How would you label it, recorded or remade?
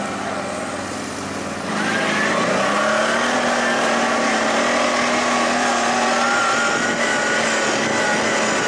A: recorded